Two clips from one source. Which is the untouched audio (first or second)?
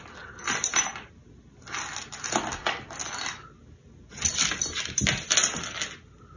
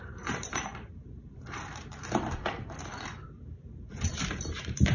first